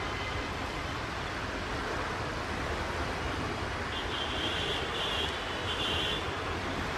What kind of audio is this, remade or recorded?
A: remade